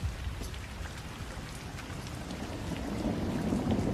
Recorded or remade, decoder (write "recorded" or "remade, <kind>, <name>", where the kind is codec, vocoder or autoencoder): recorded